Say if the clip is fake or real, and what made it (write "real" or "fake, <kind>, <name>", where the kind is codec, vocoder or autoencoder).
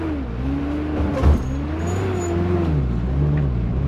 real